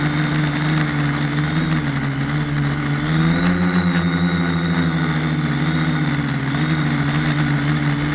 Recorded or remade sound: recorded